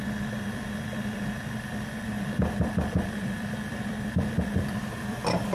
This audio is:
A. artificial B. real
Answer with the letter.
A